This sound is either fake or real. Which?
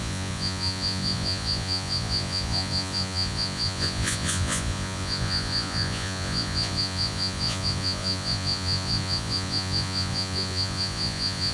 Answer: fake